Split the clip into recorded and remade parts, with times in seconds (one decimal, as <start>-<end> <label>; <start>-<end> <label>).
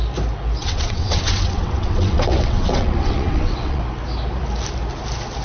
0.0-0.6 recorded; 0.6-3.8 remade; 3.8-5.4 recorded